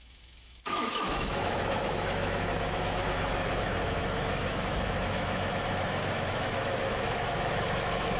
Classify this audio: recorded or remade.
remade